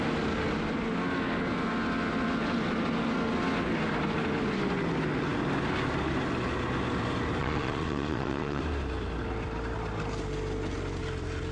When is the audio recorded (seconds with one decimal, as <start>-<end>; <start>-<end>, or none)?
0.0-7.4; 8.6-11.5